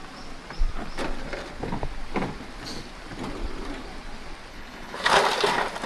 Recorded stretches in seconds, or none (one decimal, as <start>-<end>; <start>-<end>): 0.0-4.5; 5.2-5.9